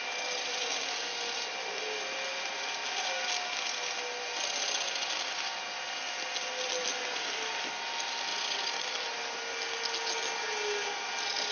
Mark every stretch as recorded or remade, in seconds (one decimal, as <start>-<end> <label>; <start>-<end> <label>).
0.0-11.5 recorded